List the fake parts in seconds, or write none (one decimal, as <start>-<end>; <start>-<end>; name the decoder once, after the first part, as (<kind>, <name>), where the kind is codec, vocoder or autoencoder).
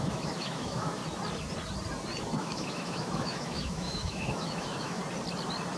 0.0-1.0 (autoencoder, DAC-VAE); 2.4-5.0